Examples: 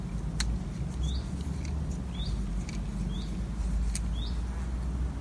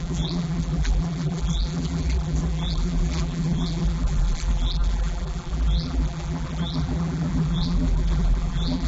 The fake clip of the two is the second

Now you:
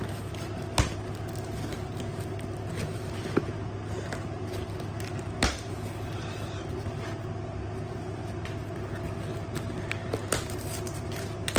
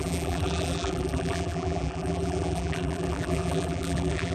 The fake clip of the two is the second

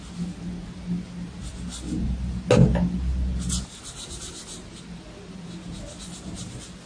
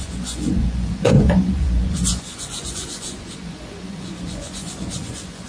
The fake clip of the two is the second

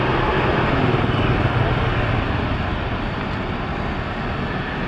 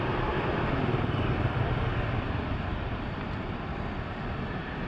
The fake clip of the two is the second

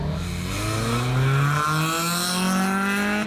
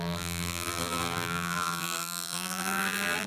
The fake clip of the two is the second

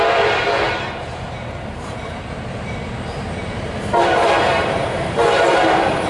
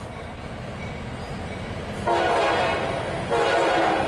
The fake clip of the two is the first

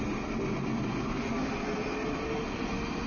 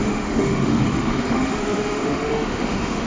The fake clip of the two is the second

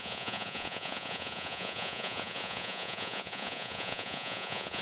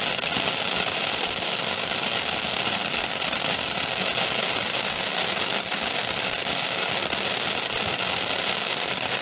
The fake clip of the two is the first